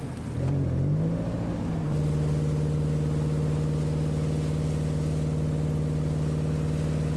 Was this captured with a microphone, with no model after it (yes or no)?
yes